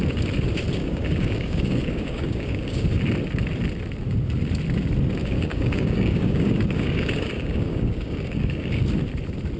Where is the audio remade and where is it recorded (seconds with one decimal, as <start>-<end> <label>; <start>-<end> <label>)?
0.0-0.8 recorded; 0.8-2.8 remade; 2.8-5.2 recorded; 5.2-8.8 remade; 8.8-9.6 recorded